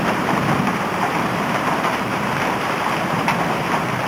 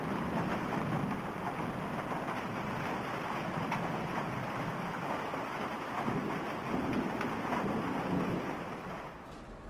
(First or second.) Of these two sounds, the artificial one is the first